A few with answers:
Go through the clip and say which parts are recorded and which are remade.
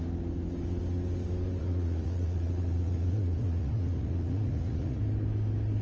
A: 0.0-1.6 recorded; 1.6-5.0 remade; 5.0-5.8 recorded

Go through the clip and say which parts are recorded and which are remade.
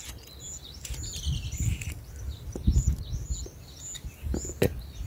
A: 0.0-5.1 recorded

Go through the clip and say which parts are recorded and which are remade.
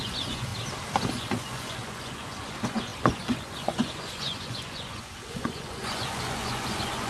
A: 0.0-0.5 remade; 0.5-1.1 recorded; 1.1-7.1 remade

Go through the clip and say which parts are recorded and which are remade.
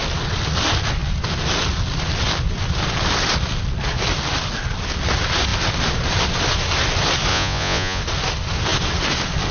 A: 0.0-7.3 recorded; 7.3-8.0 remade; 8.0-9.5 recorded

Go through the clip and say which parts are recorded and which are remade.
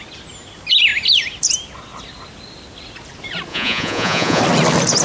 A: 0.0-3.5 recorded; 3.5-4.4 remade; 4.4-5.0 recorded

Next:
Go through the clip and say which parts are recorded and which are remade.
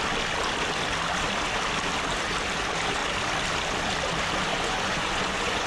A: 0.0-4.5 recorded; 4.5-5.7 remade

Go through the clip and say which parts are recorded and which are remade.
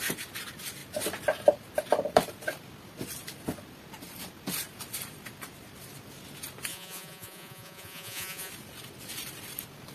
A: 0.0-6.7 recorded; 6.7-8.5 remade; 8.5-9.9 recorded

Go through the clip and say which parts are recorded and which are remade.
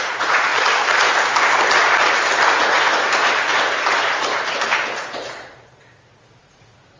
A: 0.0-0.5 remade; 0.5-2.5 recorded; 2.5-2.9 remade; 2.9-4.9 recorded; 4.9-7.0 remade